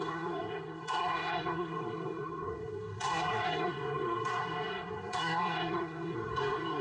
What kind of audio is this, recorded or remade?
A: remade